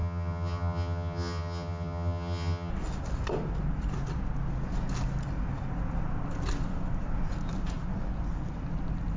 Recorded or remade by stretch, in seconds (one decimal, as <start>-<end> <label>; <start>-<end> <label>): 0.0-2.7 remade; 2.7-9.2 recorded